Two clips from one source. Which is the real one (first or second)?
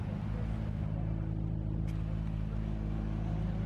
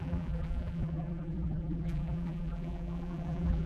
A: first